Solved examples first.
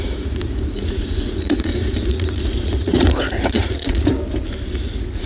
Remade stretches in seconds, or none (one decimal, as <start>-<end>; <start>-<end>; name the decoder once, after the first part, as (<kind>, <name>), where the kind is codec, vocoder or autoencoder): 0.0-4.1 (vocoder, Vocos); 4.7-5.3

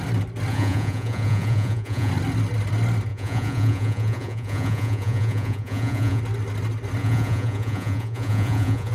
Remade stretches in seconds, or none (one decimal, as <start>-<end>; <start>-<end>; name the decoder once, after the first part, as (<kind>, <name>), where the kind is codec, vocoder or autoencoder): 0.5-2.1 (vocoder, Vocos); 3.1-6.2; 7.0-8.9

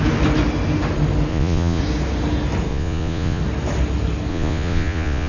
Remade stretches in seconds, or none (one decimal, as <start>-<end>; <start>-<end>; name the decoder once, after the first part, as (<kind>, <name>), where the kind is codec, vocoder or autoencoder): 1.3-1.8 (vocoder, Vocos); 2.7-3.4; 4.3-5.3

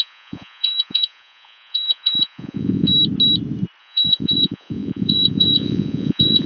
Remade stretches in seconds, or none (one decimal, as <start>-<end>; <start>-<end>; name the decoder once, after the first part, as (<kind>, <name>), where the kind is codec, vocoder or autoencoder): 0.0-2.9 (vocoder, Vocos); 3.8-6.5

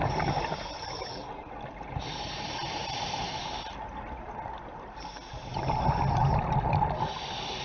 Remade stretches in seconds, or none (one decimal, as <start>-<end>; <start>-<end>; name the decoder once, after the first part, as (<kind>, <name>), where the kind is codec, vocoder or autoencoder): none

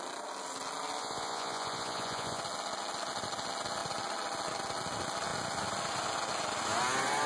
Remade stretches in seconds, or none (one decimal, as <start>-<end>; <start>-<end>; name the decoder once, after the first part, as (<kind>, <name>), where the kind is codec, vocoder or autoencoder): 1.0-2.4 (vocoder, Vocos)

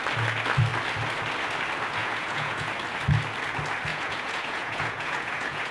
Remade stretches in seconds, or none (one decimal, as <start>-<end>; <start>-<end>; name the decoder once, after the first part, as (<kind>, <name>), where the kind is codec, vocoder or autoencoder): 2.0-2.7 (vocoder, Vocos); 3.9-5.7

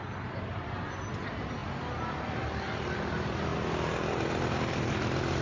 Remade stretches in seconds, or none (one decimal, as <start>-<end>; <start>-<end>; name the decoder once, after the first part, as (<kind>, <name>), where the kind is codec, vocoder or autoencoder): none